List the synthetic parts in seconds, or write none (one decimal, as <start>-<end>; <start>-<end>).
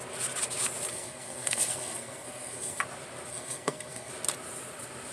0.9-2.8; 3.3-4.1